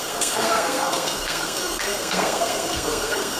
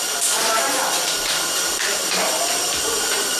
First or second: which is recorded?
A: second